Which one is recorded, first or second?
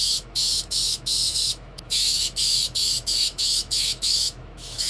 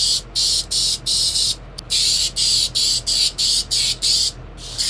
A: second